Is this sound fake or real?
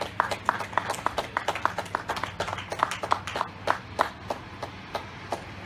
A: real